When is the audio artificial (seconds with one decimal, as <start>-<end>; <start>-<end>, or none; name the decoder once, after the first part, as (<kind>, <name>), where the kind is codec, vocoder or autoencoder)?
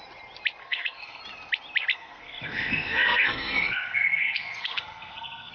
0.6-1.2 (codec, SNAC); 1.9-5.5